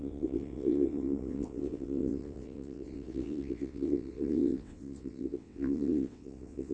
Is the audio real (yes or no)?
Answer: no